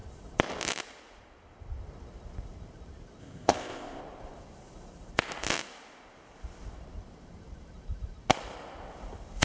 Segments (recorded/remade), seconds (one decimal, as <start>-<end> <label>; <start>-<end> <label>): 0.0-3.2 recorded; 3.2-4.0 remade; 4.0-9.4 recorded